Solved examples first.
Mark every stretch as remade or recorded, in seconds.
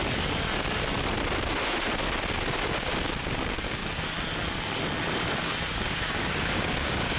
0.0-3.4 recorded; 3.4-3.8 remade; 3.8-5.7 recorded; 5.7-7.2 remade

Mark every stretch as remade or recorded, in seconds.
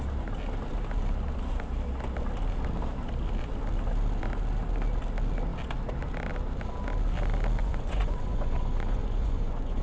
0.0-7.6 recorded; 7.6-9.8 remade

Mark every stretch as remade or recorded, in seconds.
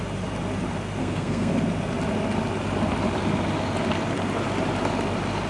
0.0-1.0 recorded; 1.0-1.5 remade; 1.5-5.5 recorded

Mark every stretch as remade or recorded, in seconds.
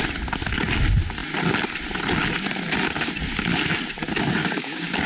0.0-4.4 recorded; 4.4-5.1 remade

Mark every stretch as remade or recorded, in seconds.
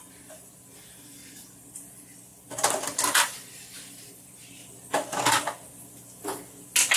0.0-7.0 recorded